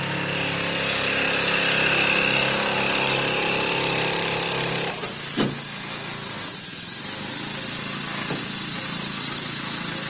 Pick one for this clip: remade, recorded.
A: recorded